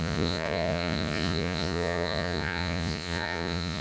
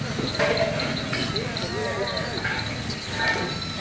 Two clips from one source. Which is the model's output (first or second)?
first